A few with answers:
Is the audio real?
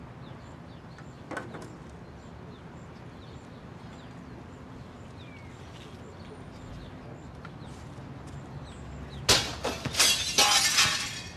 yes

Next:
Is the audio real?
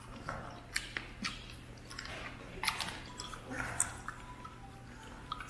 yes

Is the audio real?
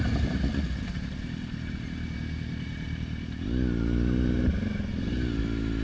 yes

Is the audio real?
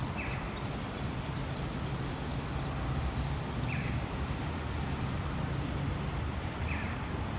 no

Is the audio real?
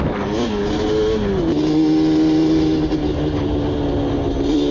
yes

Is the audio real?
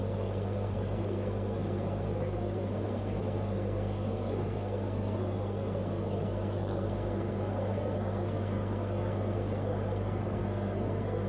no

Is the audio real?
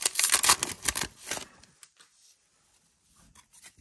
yes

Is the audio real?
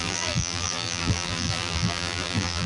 no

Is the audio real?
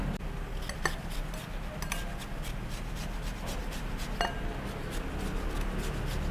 yes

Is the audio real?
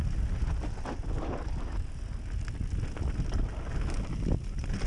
yes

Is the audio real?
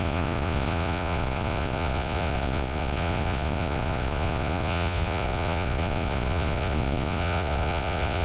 no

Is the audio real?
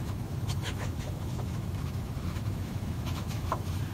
no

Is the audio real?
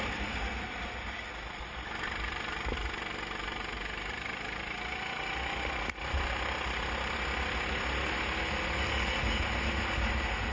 yes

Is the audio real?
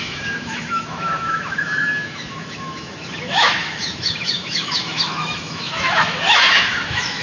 no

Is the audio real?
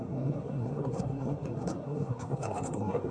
no